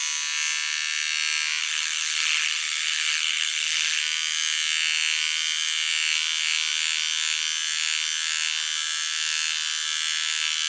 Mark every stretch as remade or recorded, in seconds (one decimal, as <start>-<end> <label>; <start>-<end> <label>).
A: 0.0-1.6 recorded; 1.6-4.0 remade; 4.0-10.7 recorded